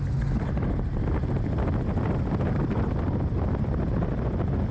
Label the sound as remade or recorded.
recorded